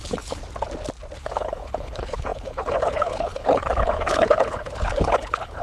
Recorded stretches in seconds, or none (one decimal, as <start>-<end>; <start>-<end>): 0.4-1.2